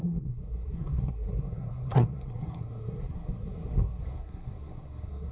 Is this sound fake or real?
fake